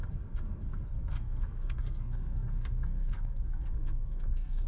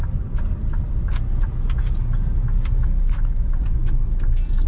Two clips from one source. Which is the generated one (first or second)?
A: first